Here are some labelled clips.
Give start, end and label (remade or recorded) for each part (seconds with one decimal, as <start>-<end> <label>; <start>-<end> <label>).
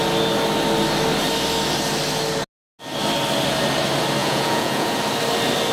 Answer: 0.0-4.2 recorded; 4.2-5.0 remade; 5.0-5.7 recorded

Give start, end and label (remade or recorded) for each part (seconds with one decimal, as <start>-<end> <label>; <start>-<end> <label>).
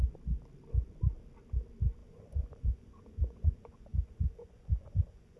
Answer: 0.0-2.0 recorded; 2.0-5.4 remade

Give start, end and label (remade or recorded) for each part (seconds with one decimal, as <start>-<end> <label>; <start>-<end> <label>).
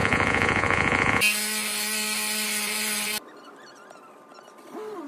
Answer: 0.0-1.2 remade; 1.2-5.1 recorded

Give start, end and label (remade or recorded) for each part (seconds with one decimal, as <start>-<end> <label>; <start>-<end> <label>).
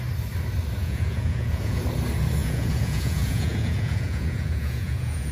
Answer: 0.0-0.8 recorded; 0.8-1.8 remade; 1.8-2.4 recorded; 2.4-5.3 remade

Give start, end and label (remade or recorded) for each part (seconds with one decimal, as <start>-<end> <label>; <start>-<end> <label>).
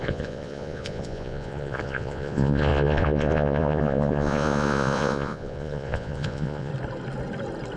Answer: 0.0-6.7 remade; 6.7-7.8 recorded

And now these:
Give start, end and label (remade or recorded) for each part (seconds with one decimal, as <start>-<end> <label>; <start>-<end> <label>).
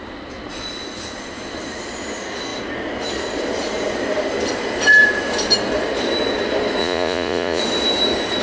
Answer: 0.0-6.8 recorded; 6.8-7.6 remade; 7.6-8.4 recorded